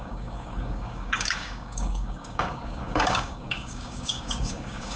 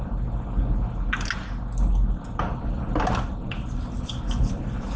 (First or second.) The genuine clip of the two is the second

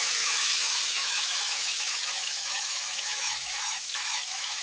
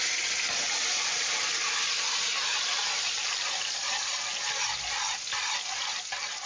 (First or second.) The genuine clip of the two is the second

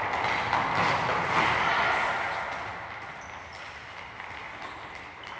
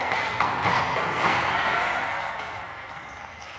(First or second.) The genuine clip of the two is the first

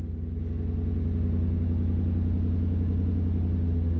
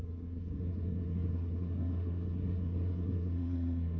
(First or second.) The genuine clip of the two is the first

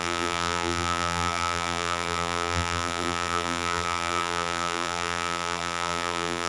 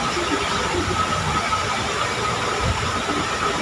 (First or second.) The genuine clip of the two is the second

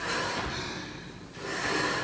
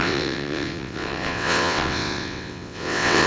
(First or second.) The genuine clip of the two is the first